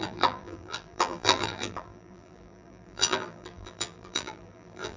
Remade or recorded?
remade